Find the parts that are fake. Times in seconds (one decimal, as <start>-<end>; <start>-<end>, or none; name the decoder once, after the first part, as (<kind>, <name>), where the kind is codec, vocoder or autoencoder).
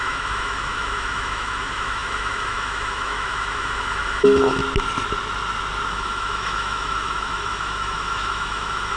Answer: 0.0-4.6 (autoencoder, DAC-VAE); 5.9-9.0